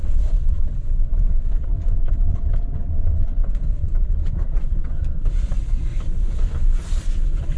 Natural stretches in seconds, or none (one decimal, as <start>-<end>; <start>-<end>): 5.9-7.6